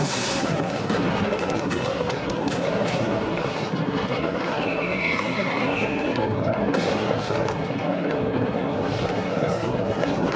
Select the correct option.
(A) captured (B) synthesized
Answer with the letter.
B